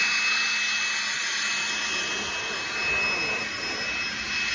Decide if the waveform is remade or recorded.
recorded